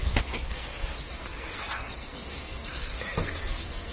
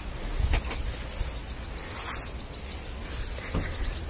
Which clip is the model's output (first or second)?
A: first